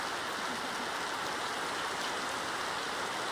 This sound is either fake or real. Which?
real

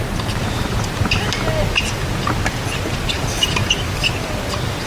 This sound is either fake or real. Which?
real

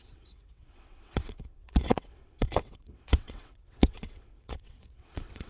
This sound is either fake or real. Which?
fake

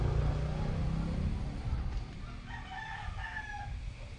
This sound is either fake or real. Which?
real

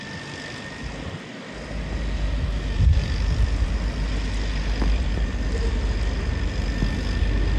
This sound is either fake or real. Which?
real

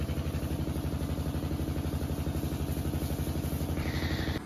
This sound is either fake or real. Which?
real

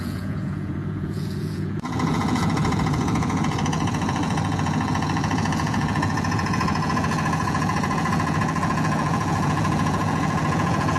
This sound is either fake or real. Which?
fake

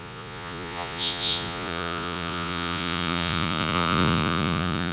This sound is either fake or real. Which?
fake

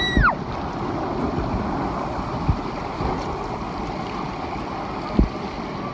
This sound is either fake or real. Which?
real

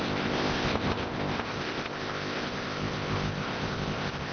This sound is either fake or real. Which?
fake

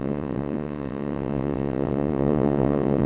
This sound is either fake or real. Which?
fake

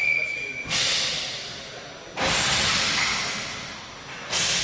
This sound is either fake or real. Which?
real